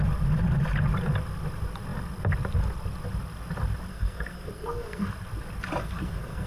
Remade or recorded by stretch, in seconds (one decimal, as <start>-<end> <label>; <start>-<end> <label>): 0.0-3.9 recorded; 3.9-5.1 remade; 5.1-5.8 recorded; 5.8-6.5 remade